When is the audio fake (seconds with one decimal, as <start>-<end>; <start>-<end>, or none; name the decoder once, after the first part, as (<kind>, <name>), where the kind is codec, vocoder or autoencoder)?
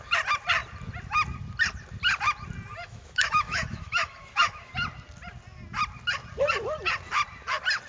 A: 2.8-4.7 (autoencoder, DAC-VAE)